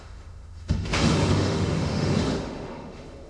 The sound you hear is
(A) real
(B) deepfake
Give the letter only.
B